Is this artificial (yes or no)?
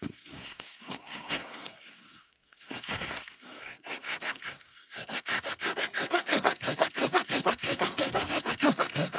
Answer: yes